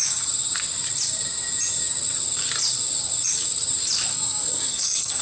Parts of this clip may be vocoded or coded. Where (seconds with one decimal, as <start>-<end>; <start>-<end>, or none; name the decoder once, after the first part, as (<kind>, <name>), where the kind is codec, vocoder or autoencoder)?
4.1-5.2 (codec, SNAC)